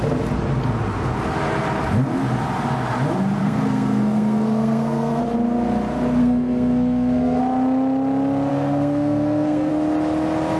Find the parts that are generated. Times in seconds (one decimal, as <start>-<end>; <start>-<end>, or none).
3.4-5.2; 6.2-7.4; 8.5-9.7